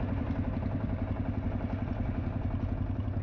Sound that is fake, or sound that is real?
real